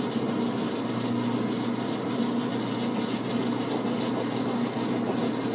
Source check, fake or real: real